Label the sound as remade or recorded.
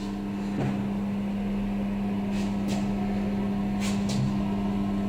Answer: recorded